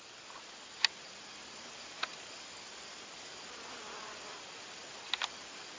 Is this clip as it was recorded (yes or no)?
yes